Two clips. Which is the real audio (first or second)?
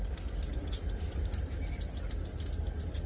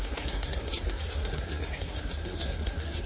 first